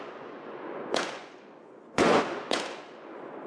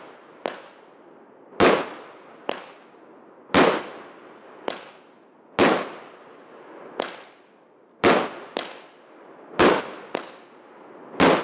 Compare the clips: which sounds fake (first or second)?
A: first